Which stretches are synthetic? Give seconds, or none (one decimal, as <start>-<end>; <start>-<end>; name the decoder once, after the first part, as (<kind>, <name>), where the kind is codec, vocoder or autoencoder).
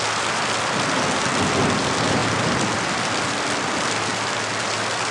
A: none